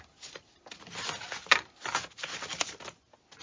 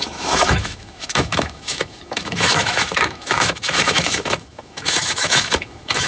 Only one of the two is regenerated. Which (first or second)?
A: second